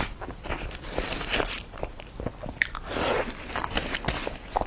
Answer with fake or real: real